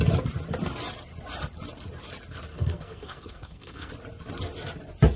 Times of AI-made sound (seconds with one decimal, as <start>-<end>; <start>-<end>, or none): 2.5-3.9